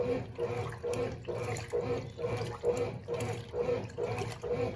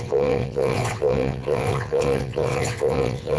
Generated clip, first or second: second